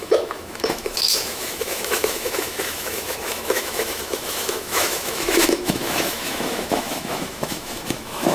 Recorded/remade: remade